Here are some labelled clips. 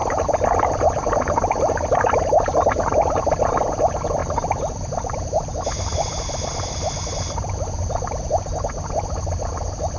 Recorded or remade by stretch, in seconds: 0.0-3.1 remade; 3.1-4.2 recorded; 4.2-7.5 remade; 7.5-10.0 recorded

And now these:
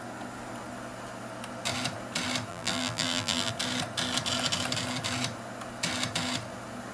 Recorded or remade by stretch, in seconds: 0.0-2.5 recorded; 2.5-3.5 remade; 3.5-6.9 recorded

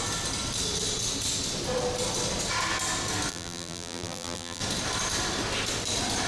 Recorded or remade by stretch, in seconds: 0.0-3.3 recorded; 3.3-4.6 remade; 4.6-6.3 recorded